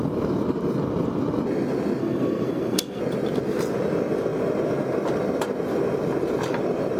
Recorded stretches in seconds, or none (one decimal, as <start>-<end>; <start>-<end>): 0.0-2.0; 3.0-7.0

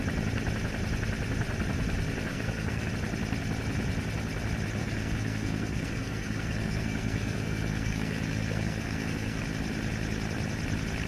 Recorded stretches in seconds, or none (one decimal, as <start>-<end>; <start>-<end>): 0.0-2.3; 2.9-4.8; 9.4-11.1

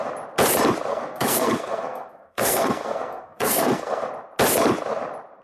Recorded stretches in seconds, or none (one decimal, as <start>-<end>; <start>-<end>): 0.0-0.9; 4.1-5.4

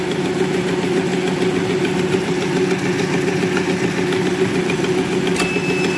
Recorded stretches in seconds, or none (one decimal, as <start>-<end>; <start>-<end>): 0.0-6.0

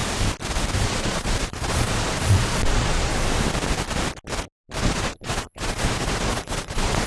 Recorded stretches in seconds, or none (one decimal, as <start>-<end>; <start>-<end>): 0.0-0.8; 3.1-4.8